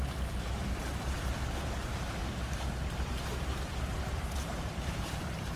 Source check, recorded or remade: remade